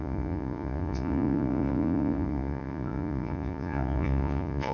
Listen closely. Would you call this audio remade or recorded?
remade